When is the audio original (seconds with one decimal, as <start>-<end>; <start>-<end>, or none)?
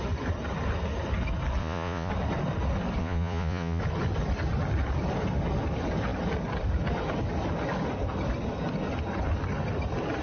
0.0-1.6; 2.1-3.0; 3.8-10.2